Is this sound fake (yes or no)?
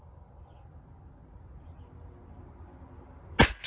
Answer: no